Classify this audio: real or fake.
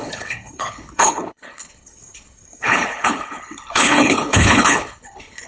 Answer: fake